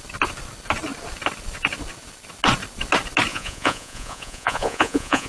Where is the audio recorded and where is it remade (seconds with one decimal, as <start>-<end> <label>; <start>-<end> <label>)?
0.0-3.3 recorded; 3.3-5.3 remade